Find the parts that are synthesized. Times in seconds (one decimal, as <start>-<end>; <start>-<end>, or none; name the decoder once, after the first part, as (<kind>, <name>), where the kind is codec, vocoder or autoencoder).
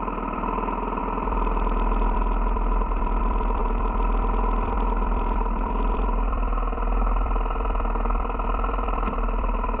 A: 0.0-9.8 (vocoder, BigVGAN v2)